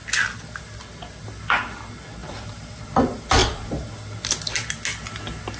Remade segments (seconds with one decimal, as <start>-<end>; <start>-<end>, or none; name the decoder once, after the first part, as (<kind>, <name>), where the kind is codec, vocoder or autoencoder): 2.2-2.8 (vocoder, BigVGAN v2)